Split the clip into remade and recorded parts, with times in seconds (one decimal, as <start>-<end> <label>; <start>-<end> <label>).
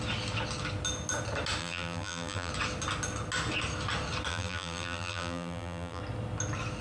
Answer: 0.0-1.6 recorded; 1.6-2.5 remade; 2.5-4.3 recorded; 4.3-6.0 remade; 6.0-6.8 recorded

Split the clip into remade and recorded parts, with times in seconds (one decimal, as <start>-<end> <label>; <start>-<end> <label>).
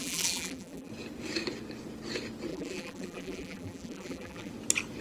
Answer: 0.0-0.9 remade; 0.9-2.5 recorded; 2.5-4.5 remade; 4.5-5.0 recorded